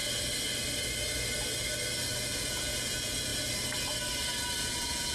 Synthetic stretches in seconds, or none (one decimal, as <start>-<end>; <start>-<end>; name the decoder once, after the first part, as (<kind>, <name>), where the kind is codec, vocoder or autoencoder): 2.2-3.3 (vocoder, Vocos); 4.6-5.1